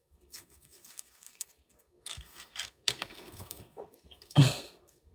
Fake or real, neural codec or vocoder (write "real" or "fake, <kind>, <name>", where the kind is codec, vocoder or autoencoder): fake, codec, SNAC